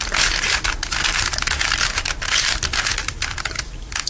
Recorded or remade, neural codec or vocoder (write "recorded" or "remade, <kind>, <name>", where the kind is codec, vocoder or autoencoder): recorded